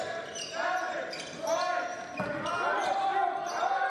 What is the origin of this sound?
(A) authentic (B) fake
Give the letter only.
A